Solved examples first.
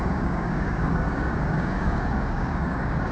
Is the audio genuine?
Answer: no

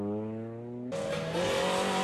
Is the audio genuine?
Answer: yes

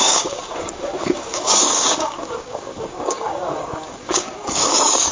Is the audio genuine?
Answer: no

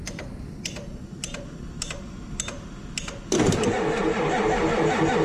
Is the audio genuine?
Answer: yes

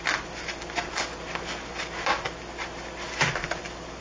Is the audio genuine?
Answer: yes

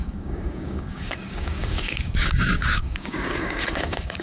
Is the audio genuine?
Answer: no